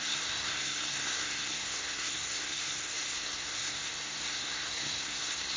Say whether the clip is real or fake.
fake